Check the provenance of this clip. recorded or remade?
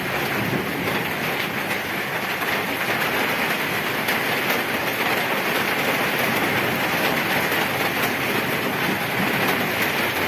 recorded